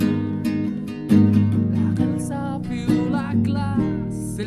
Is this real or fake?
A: real